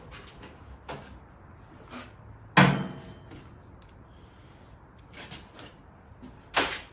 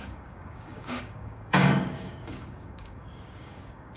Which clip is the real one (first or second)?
first